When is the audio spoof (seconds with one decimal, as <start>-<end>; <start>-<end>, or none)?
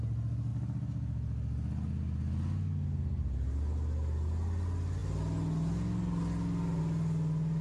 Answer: none